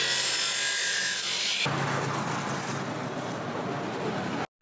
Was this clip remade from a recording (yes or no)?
no